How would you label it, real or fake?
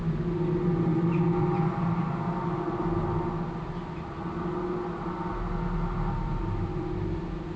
real